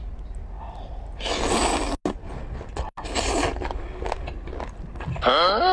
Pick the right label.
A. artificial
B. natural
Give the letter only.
B